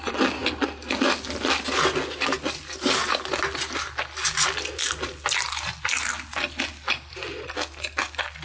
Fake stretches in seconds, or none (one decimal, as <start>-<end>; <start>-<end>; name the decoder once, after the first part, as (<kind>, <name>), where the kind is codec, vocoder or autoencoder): none